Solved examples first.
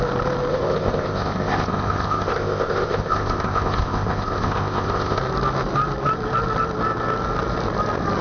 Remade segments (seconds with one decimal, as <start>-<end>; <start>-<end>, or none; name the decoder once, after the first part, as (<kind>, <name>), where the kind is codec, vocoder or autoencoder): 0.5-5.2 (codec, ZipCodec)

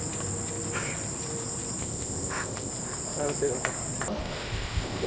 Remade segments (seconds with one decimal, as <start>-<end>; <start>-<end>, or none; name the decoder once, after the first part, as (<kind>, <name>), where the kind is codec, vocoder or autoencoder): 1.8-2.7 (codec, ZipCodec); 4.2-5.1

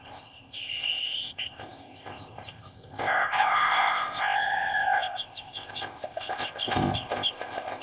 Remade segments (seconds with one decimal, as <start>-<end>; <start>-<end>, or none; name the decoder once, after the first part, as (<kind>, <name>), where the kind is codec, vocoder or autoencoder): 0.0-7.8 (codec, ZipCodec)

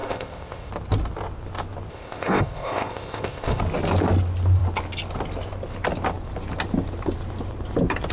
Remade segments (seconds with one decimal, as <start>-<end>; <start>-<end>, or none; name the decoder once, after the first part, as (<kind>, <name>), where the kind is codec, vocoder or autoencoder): 0.0-0.7 (codec, ZipCodec); 1.9-3.6